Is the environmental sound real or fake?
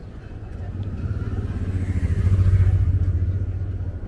fake